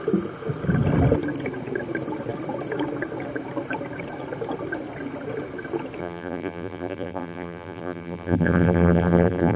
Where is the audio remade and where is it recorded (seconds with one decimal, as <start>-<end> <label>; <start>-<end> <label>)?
0.0-6.0 recorded; 6.0-9.6 remade